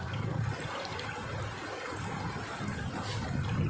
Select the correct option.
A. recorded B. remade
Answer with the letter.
A